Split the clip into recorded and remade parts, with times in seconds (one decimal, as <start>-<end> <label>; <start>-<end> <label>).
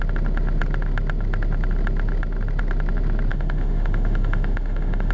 0.0-3.3 recorded; 3.3-5.1 remade